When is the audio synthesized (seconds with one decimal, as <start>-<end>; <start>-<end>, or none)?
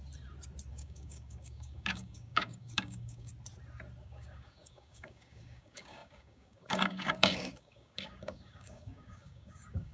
0.7-3.3; 4.0-9.9